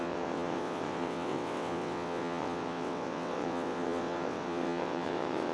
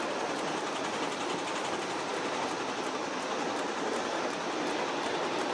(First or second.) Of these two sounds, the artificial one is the first